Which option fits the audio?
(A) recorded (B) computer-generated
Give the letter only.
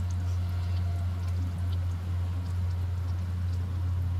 A